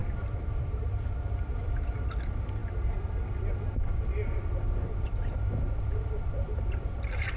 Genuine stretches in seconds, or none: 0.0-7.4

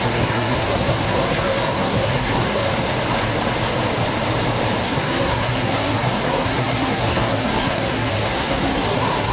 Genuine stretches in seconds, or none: 2.7-4.8